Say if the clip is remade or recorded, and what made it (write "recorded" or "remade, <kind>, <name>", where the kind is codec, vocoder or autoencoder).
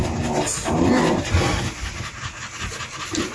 recorded